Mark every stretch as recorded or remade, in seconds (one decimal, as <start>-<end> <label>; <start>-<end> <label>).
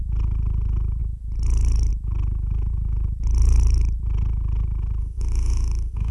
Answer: 0.0-5.0 recorded; 5.0-6.1 remade